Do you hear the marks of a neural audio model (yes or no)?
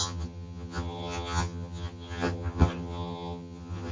yes